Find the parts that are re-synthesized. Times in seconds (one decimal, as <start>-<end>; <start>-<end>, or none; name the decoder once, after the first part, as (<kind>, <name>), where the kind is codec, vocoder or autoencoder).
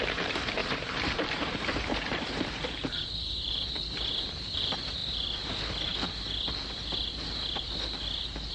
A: 0.0-5.0 (vocoder, BigVGAN v2)